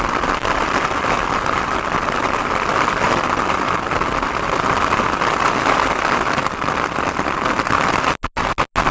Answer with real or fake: real